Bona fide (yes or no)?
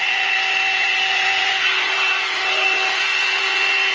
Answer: yes